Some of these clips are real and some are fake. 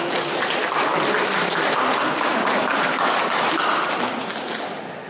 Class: real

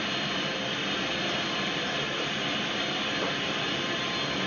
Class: real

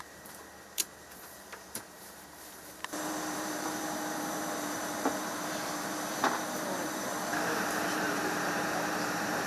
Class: fake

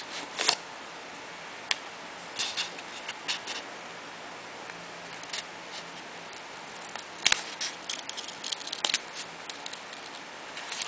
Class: real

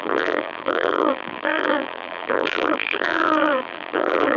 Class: fake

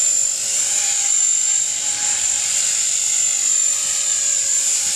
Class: fake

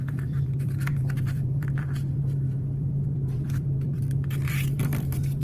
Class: fake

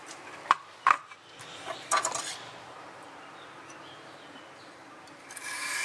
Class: fake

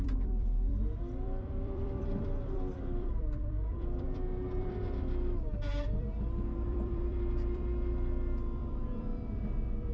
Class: fake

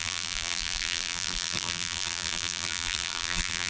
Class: fake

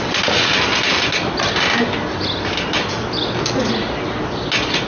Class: real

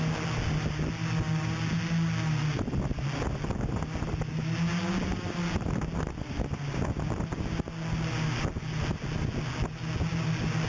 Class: real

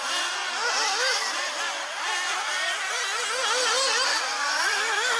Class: real